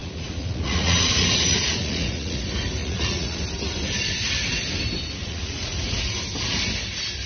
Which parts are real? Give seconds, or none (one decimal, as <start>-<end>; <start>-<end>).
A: 2.4-2.8; 3.4-5.2; 6.1-7.3